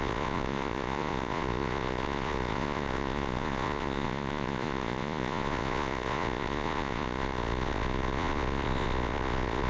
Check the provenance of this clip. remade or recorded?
remade